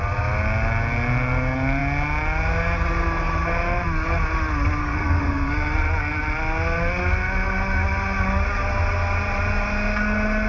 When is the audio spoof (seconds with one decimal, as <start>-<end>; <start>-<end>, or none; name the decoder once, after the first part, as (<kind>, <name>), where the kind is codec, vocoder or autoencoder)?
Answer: 4.8-5.5 (codec, SNAC)